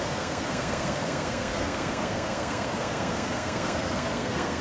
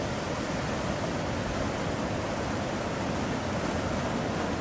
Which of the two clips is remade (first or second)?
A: first